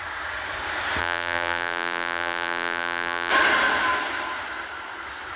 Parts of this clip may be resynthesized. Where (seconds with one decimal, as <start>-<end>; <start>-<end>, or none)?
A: 1.0-3.3